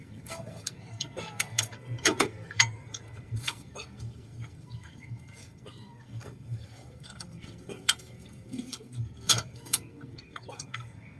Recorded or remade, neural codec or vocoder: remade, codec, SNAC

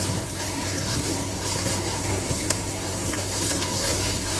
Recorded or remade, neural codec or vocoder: remade, codec, SNAC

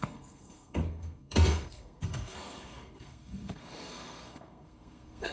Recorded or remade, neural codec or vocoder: remade, codec, SNAC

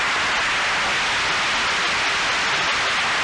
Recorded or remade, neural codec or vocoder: recorded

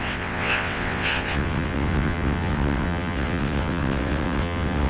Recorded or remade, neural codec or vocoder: remade, vocoder, WaveNeXt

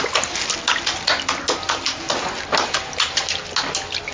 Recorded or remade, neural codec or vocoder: recorded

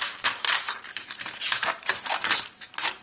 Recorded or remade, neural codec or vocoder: remade, vocoder, BigVGAN v2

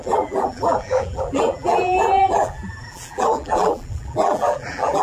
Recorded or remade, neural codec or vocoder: remade, vocoder, BigVGAN v2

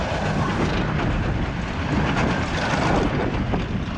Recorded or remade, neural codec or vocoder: recorded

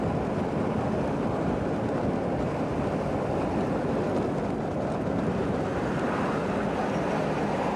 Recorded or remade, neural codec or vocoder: recorded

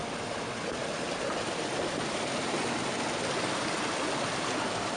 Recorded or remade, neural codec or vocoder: recorded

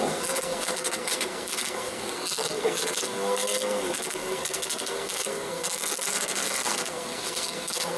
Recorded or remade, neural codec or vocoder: remade, codec, SNAC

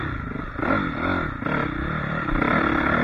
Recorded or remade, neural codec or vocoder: remade, vocoder, BigVGAN v2